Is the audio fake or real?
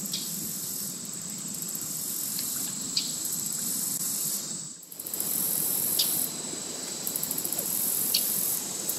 fake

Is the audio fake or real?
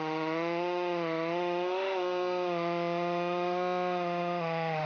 fake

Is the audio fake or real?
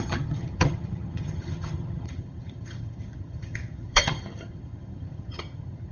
fake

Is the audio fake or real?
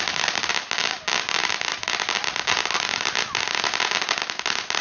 real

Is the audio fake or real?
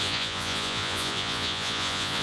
fake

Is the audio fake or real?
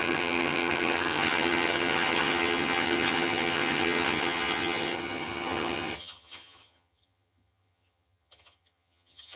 fake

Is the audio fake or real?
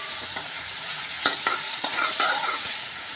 fake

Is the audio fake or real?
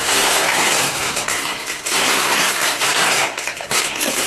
fake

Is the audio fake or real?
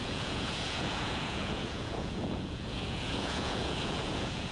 fake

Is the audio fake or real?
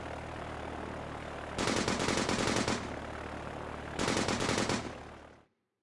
real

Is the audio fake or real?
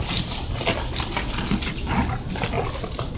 real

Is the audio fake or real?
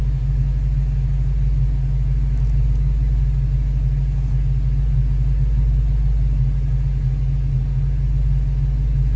real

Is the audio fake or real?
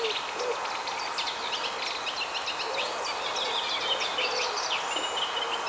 real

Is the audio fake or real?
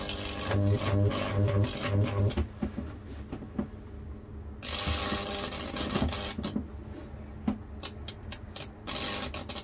real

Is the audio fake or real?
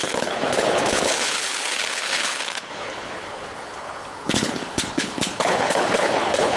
fake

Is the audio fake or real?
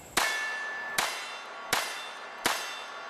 real